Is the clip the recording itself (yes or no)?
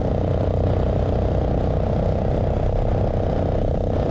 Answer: yes